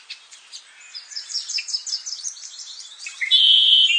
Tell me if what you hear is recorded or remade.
remade